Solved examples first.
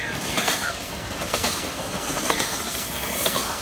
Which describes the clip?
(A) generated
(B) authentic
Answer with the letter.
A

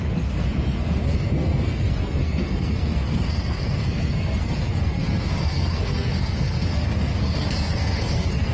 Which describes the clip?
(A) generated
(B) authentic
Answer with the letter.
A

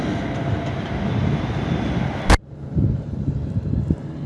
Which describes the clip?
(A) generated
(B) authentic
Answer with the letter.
B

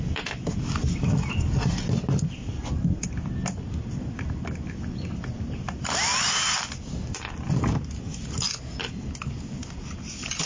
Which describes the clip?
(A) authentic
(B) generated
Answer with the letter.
A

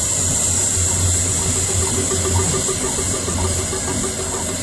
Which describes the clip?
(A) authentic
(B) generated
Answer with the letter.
A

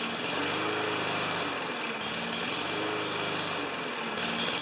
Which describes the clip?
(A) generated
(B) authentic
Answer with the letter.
B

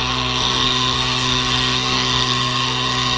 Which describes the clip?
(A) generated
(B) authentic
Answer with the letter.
A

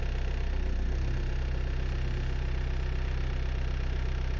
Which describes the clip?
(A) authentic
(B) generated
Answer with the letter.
A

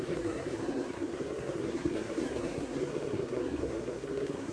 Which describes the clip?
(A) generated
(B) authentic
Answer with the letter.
A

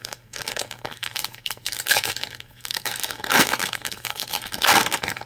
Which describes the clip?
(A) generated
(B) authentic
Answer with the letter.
A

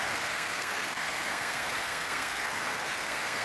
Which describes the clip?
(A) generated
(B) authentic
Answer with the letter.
A